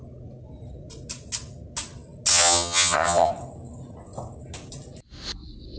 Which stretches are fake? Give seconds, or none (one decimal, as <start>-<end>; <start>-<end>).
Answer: 2.3-3.3

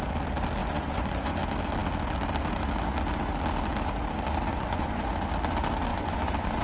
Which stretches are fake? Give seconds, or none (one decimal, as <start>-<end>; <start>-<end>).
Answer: 0.6-1.4; 4.5-5.0; 5.9-6.6

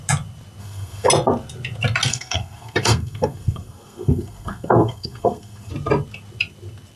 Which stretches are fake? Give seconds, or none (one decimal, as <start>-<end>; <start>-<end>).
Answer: 0.6-1.1; 2.1-5.7

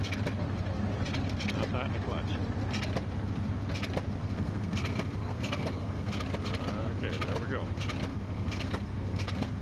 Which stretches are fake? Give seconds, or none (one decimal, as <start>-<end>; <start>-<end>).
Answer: 4.2-6.2; 8.1-9.6

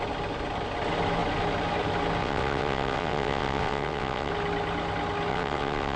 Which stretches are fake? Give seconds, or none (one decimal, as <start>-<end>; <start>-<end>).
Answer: 2.2-4.3; 5.3-6.0

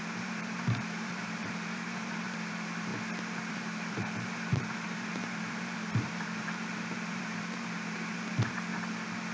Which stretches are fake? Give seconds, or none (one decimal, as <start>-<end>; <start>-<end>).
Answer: 0.0-2.9; 3.5-8.7

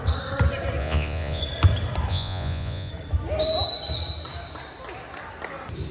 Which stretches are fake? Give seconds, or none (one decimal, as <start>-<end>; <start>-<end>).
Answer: 0.8-1.4; 2.1-2.9

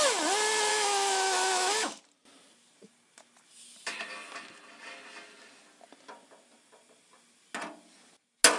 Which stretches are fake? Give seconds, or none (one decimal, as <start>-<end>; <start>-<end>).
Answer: 0.7-2.0